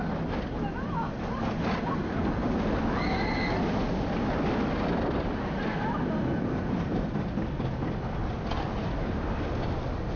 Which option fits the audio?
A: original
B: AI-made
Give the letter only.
A